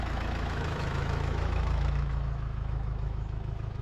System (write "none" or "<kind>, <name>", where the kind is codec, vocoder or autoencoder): autoencoder, DAC-VAE